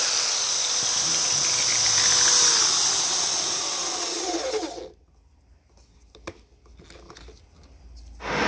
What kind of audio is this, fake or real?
real